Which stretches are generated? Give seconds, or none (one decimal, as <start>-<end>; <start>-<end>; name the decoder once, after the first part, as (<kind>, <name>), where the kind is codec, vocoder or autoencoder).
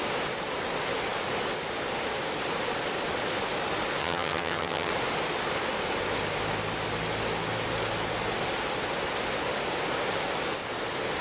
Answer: 4.0-4.9 (vocoder, HiFi-GAN)